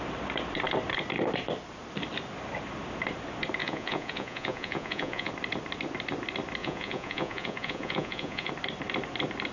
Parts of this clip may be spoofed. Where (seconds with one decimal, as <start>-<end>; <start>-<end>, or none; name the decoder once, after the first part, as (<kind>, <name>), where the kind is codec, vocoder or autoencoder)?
3.6-5.3 (vocoder, Vocos); 6.6-8.5